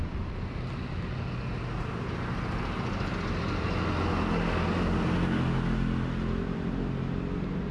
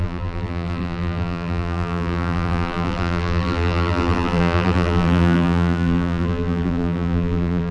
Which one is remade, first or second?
second